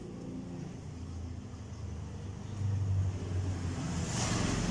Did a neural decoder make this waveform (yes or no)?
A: no